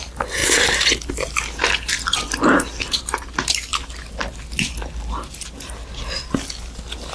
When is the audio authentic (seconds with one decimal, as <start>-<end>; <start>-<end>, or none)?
0.4-1.9; 3.7-7.1